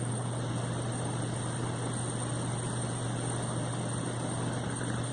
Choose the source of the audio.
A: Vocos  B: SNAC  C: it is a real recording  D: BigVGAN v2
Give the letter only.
C